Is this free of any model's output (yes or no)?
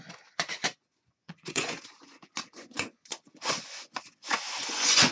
no